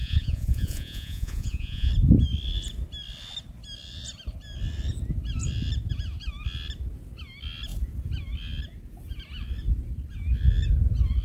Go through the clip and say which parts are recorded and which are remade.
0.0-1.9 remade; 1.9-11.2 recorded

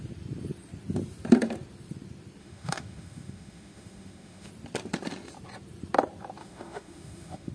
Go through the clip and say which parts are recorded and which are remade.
0.0-2.4 recorded; 2.4-4.5 remade; 4.5-6.4 recorded; 6.4-7.5 remade